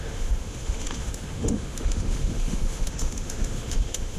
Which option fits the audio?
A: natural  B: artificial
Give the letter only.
B